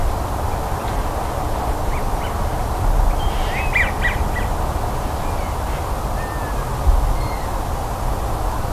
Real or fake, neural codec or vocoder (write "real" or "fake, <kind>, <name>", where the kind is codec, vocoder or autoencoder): real